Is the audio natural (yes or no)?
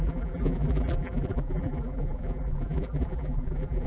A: no